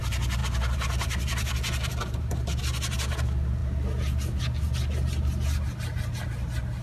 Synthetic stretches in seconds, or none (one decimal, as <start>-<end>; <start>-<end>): 0.4-2.6